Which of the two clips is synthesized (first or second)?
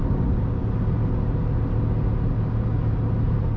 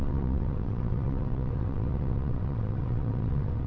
second